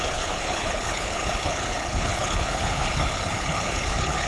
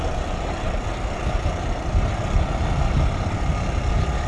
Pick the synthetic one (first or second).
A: first